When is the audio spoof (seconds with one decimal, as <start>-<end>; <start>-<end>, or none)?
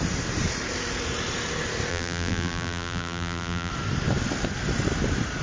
1.9-3.7